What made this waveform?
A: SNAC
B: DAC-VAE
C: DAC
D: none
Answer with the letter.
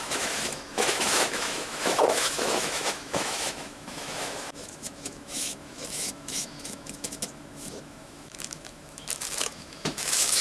B